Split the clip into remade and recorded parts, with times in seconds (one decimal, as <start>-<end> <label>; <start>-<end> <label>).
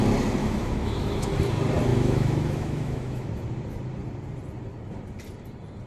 0.0-0.4 recorded; 0.4-1.3 remade; 1.3-1.9 recorded; 1.9-3.3 remade; 3.3-5.9 recorded